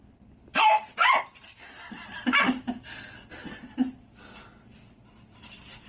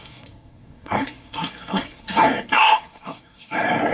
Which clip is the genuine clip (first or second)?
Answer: first